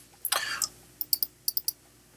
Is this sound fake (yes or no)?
no